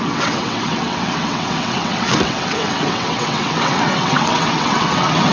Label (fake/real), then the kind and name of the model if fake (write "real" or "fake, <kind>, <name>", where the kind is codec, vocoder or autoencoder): fake, vocoder, WaveNeXt